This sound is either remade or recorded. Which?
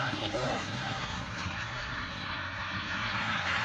remade